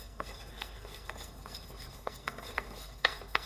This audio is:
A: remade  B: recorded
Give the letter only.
A